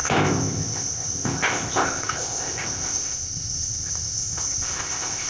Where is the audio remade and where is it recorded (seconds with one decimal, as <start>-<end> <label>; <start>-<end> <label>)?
0.0-5.3 remade